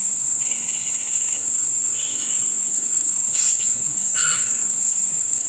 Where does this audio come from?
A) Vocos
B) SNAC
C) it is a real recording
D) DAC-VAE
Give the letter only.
B